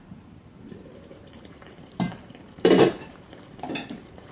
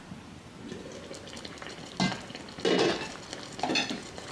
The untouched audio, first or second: second